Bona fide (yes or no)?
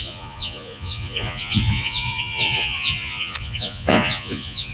no